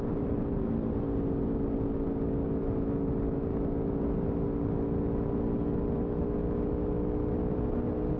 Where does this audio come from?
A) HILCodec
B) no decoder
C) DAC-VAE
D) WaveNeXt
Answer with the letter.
B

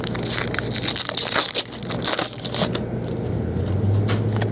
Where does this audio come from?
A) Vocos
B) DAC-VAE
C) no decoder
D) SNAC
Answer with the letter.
C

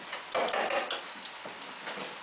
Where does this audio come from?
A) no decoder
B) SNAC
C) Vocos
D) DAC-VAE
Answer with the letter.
A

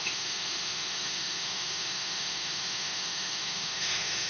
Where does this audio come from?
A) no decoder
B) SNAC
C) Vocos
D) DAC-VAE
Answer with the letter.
D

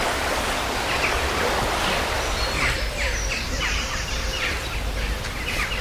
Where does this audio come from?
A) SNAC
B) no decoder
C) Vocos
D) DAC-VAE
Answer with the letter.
B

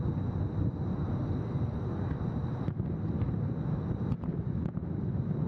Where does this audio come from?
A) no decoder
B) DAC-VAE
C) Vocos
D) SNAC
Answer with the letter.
A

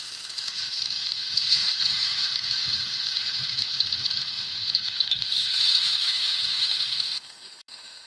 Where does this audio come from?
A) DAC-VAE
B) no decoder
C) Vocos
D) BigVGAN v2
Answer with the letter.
A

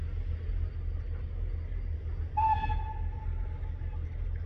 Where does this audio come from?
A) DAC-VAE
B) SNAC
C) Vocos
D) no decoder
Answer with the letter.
D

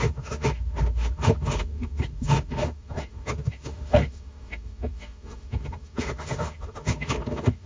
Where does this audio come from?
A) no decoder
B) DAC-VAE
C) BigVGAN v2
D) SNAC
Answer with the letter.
B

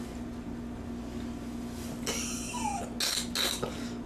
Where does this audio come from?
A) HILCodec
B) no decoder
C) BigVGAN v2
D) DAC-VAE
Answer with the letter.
B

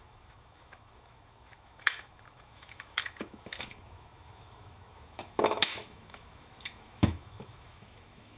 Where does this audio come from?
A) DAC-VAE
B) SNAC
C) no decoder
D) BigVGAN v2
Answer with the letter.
A